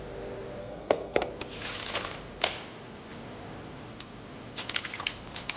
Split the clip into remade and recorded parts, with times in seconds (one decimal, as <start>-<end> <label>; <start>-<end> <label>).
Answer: 0.0-0.6 recorded; 0.6-1.3 remade; 1.3-5.6 recorded